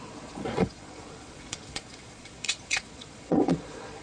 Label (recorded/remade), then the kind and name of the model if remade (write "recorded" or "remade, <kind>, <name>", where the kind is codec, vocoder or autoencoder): remade, vocoder, Vocos